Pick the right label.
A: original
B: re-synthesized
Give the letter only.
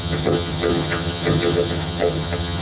B